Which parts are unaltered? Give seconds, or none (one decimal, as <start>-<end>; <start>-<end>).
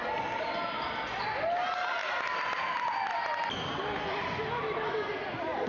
0.0-5.7